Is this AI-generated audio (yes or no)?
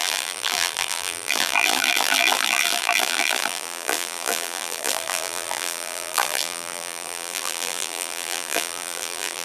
yes